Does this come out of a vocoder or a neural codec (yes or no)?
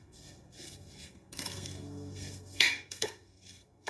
yes